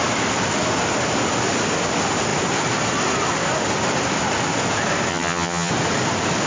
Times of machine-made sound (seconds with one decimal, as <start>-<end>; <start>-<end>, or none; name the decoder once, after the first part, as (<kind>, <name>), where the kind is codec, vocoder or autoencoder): 5.1-5.7 (vocoder, HiFi-GAN)

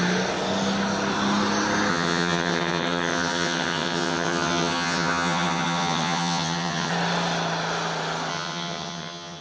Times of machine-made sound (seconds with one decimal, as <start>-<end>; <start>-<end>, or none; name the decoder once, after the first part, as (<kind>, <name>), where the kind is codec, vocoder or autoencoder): 1.9-6.9 (vocoder, HiFi-GAN); 8.3-9.4